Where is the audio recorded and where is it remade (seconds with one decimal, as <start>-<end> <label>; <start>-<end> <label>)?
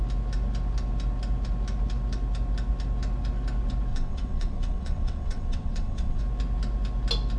0.0-3.9 recorded; 3.9-6.2 remade; 6.2-7.4 recorded